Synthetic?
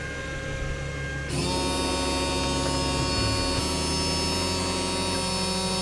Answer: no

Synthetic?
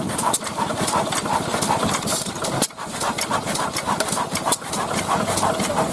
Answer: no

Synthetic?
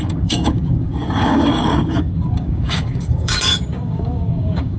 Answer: yes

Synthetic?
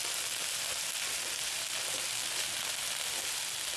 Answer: no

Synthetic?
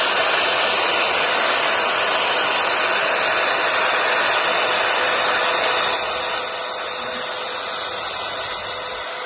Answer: no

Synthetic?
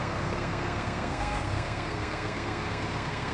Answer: yes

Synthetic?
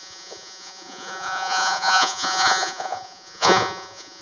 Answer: yes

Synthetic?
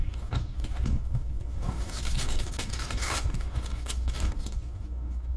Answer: yes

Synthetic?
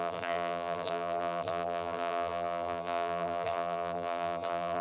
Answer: yes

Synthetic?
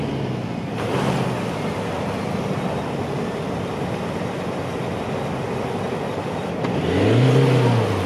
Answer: no